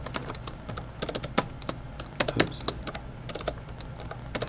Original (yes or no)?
yes